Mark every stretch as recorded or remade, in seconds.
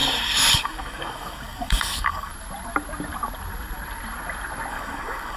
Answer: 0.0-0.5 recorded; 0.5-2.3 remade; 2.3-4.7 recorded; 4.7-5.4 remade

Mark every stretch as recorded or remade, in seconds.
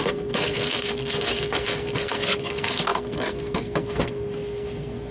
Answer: 0.0-5.1 remade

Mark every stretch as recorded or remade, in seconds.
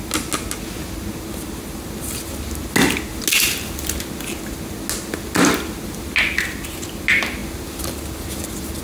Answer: 0.0-8.8 recorded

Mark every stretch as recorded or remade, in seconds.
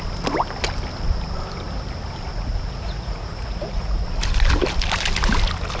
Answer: 0.0-2.3 recorded; 2.3-4.1 remade; 4.1-5.8 recorded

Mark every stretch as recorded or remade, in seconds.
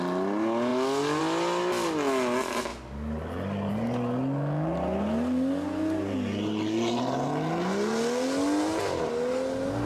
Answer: 0.0-9.9 recorded